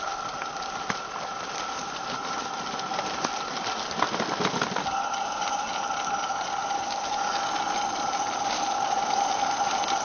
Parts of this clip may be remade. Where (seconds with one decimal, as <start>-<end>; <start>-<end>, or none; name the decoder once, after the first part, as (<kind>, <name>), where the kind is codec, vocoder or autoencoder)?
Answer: none